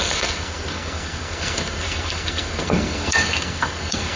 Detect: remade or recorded remade